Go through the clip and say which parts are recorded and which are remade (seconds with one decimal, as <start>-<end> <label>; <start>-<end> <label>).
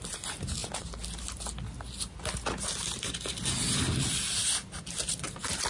0.0-5.7 recorded